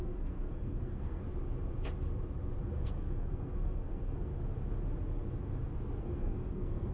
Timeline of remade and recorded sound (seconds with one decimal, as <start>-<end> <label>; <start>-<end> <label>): 0.0-1.2 remade; 1.2-2.6 recorded; 2.6-4.3 remade; 4.3-6.0 recorded; 6.0-6.9 remade